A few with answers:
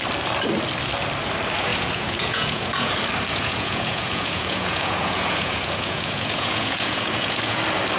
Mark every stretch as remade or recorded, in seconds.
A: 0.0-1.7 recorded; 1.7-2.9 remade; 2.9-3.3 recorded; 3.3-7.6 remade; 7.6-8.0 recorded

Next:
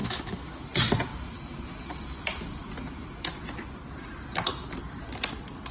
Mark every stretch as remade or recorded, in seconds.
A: 0.0-0.6 remade; 0.6-5.7 recorded